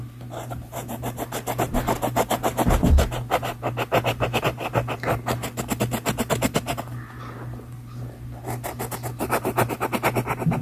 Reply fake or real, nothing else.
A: real